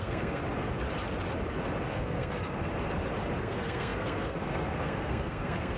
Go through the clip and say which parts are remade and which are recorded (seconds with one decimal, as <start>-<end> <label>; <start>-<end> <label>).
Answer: 0.0-0.4 remade; 0.4-1.9 recorded; 1.9-2.7 remade; 2.7-3.4 recorded; 3.4-5.8 remade